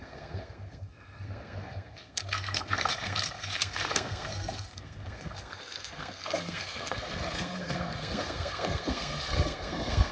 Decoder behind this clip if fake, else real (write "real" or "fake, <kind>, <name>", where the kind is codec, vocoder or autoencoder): fake, codec, SNAC